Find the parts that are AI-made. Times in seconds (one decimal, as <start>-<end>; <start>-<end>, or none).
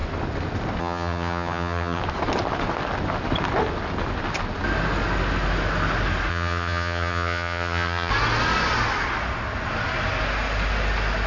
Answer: 0.8-2.0; 6.3-8.1